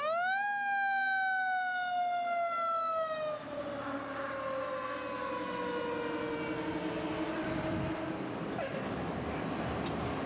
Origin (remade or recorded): recorded